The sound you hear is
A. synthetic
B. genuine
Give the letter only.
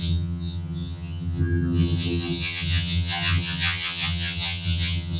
A